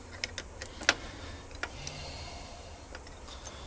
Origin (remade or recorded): recorded